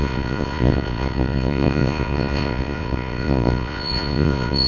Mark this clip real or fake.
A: fake